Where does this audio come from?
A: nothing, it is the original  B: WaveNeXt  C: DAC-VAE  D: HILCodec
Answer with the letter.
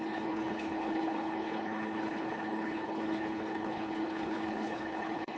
D